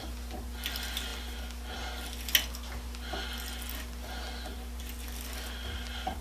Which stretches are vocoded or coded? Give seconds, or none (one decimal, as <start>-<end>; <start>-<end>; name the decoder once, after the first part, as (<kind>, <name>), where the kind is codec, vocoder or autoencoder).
none